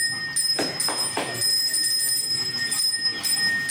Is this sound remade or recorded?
recorded